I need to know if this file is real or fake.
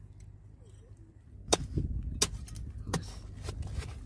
real